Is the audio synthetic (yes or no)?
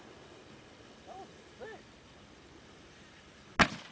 no